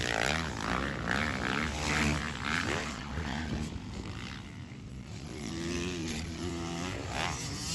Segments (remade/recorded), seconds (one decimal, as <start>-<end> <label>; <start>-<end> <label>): 0.0-2.8 recorded; 2.8-3.5 remade; 3.5-4.9 recorded; 4.9-5.5 remade; 5.5-6.0 recorded; 6.0-6.5 remade; 6.5-7.7 recorded